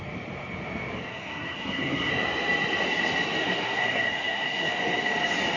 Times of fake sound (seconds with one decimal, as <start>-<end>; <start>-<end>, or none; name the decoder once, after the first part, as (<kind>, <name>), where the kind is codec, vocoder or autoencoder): 1.1-2.1 (codec, SNAC); 3.4-4.7